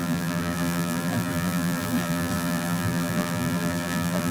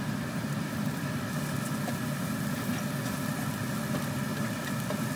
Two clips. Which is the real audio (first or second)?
second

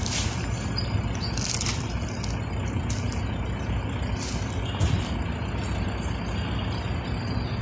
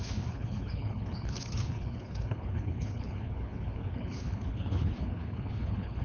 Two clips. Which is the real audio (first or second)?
first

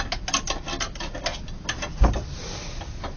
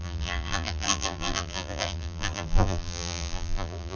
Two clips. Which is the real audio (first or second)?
first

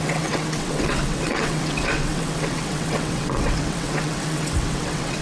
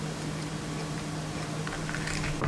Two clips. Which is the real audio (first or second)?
second